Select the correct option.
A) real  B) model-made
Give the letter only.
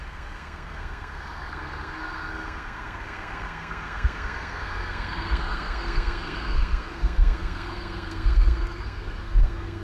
B